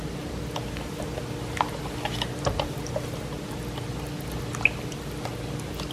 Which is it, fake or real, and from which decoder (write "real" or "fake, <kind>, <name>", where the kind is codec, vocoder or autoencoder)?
real